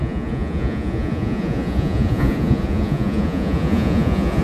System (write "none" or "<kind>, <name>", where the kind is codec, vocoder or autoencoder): vocoder, Vocos